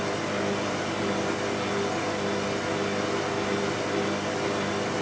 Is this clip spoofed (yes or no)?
no